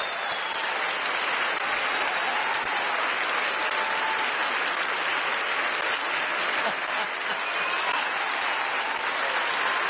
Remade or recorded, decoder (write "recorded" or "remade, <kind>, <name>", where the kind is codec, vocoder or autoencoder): recorded